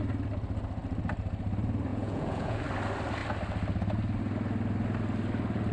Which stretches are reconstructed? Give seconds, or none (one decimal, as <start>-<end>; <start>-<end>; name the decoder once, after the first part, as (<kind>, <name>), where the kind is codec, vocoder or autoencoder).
1.9-2.6 (vocoder, Vocos)